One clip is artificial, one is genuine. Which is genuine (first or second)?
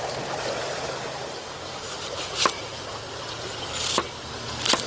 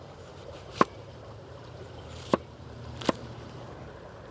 first